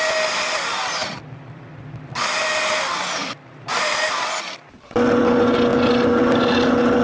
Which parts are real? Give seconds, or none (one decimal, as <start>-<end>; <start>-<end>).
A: 0.0-1.0; 5.2-5.7; 6.3-7.0